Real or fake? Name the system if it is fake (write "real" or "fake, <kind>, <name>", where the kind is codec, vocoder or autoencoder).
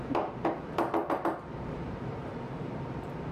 fake, vocoder, BigVGAN v2